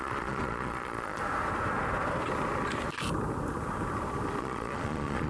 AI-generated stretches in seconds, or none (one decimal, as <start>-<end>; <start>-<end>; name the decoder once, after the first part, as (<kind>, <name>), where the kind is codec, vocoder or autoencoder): 0.0-1.2 (vocoder, Vocos); 4.4-5.3